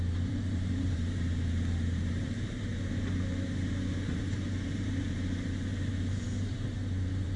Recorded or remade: remade